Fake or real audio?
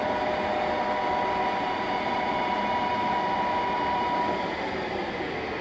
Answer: real